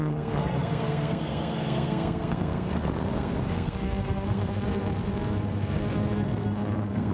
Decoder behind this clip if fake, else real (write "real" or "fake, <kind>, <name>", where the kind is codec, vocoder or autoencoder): fake, codec, SNAC